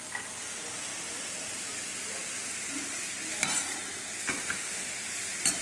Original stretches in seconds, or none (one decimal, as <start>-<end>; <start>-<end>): 0.0-4.4; 5.0-5.6